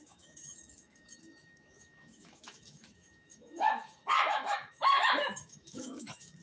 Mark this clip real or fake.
fake